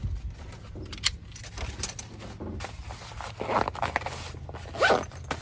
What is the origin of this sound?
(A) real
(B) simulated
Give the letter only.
A